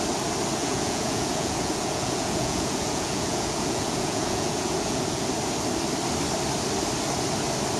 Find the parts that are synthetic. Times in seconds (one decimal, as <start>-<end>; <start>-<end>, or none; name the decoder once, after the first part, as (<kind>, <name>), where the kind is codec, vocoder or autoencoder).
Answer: 0.6-5.3 (vocoder, Vocos)

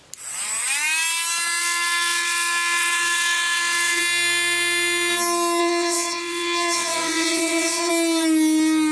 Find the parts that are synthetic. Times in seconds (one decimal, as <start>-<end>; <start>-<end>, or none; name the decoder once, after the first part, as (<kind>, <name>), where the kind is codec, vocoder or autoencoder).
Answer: 1.6-4.0 (vocoder, WaveNeXt); 5.6-7.9

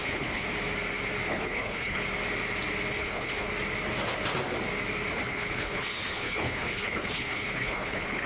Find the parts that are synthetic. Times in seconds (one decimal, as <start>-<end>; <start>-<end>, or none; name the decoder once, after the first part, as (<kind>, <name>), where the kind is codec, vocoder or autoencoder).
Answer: 0.0-0.4 (codec, HILCodec); 1.3-2.0; 2.9-3.5; 5.1-8.3

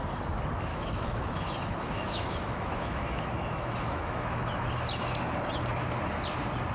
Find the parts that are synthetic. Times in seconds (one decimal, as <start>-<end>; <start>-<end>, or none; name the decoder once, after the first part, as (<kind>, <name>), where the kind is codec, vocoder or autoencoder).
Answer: 0.7-4.7 (autoencoder, DAC-VAE)

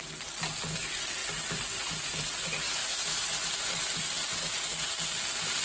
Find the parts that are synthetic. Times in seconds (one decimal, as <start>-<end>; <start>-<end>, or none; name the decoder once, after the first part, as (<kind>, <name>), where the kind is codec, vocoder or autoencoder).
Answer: none

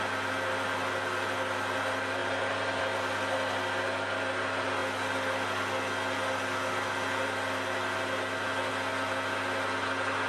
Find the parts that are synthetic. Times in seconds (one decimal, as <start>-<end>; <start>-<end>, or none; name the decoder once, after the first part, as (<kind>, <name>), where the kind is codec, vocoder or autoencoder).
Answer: 2.2-2.8 (vocoder, BigVGAN v2)

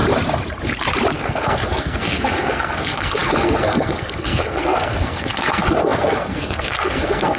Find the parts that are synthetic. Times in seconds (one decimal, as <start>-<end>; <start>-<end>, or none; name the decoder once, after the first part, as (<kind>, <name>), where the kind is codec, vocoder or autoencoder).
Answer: 1.1-7.4 (codec, SNAC)

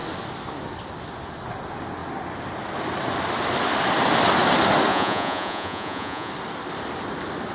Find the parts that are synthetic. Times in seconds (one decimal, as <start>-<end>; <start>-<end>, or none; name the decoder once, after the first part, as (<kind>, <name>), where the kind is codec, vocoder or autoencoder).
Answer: 4.9-6.3 (vocoder, Vocos)